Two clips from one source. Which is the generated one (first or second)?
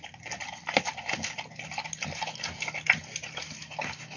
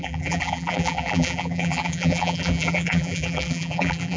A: second